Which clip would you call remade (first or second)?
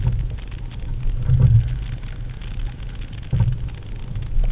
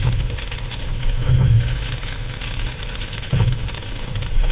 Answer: second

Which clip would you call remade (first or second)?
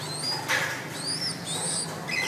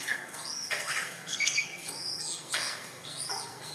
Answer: second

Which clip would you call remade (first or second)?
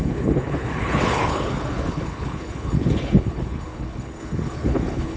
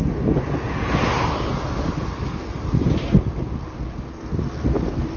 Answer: first